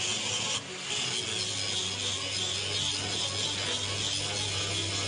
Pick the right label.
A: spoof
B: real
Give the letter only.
B